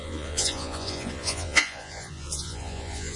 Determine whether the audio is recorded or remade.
remade